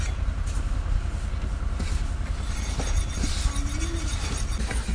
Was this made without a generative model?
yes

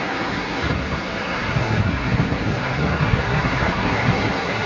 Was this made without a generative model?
no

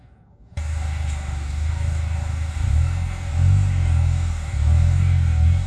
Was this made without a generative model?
no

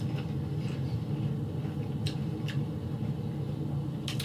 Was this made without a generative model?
yes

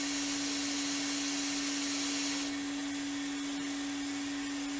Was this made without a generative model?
yes